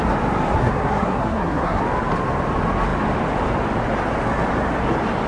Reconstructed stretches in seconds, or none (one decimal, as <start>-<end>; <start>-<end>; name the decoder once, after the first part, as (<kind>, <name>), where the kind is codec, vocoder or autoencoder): 0.6-1.8 (codec, SNAC)